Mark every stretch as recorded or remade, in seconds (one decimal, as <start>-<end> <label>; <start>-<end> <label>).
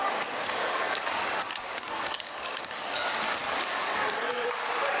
0.0-5.0 remade